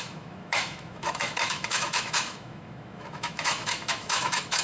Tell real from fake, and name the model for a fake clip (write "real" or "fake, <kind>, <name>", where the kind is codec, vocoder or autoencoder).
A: fake, autoencoder, DAC-VAE